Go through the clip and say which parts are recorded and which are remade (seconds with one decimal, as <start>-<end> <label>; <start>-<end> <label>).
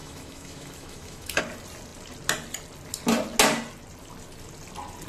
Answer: 0.0-1.4 remade; 1.4-5.1 recorded